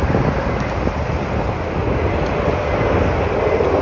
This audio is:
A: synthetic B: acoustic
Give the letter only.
B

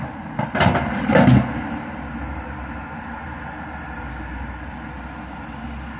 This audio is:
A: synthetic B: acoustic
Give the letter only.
B